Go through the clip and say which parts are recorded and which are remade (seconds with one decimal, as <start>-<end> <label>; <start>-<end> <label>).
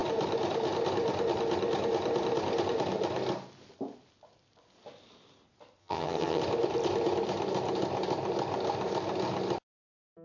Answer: 0.0-5.8 recorded; 5.8-6.4 remade; 6.4-10.2 recorded